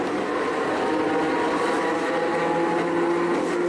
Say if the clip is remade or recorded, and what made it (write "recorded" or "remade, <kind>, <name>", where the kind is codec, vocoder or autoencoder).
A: recorded